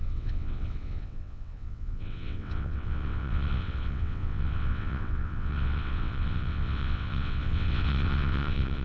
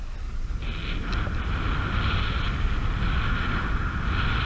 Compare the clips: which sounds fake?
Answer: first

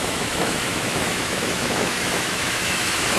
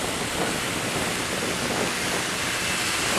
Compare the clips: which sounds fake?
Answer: first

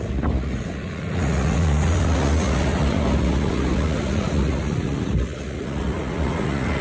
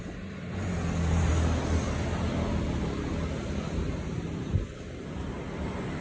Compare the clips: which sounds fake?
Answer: first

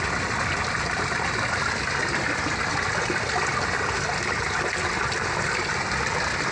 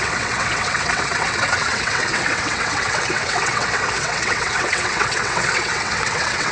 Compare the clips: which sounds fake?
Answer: second